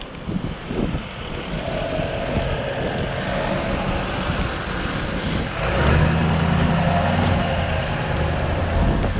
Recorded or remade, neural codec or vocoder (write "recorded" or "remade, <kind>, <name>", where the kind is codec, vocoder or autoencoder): recorded